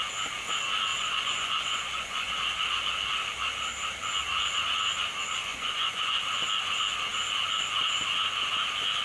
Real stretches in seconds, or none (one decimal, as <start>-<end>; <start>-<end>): 0.0-0.9; 2.3-5.5; 6.2-9.0